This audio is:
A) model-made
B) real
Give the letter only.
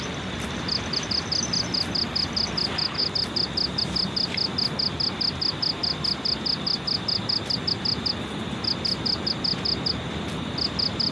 B